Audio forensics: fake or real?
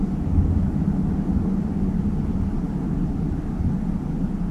real